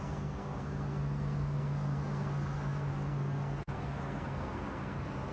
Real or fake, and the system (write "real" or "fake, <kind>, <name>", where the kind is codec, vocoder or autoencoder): fake, codec, SNAC